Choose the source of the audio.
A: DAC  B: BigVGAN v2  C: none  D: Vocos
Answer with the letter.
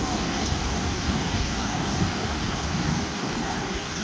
A